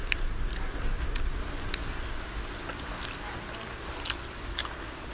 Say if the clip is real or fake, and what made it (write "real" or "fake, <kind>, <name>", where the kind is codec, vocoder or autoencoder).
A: real